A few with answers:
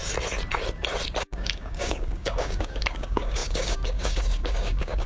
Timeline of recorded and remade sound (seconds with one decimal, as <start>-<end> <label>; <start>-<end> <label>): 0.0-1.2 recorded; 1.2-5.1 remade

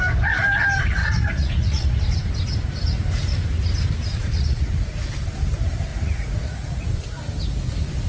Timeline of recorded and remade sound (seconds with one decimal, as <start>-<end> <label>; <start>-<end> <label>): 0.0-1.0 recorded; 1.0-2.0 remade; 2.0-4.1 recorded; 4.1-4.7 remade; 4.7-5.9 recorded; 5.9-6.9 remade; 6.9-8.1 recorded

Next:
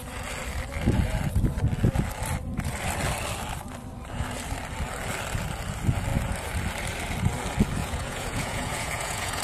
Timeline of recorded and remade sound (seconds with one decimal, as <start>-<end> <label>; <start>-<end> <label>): 0.0-7.8 recorded; 7.8-9.4 remade

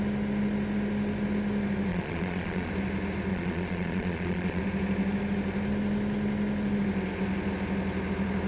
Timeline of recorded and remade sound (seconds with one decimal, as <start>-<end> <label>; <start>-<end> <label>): 0.0-1.9 recorded; 1.9-2.7 remade; 2.7-3.3 recorded; 3.3-4.6 remade; 4.6-8.5 recorded

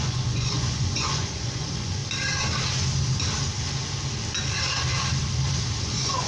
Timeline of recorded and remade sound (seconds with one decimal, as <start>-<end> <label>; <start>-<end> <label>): 0.0-2.0 remade; 2.0-5.8 recorded; 5.8-6.3 remade

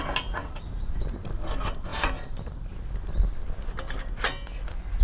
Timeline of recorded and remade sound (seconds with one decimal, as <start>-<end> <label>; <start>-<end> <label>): 0.0-0.4 recorded; 0.4-0.9 remade; 0.9-5.0 recorded

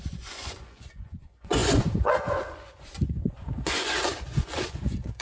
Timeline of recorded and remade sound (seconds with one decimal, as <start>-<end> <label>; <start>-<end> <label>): 0.0-5.2 remade